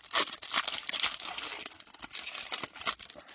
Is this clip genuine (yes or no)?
yes